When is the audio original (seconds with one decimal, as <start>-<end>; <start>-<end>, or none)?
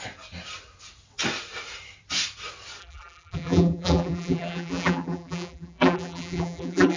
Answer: 0.0-2.8